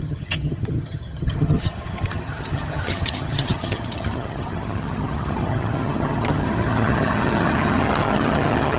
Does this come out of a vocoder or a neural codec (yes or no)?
yes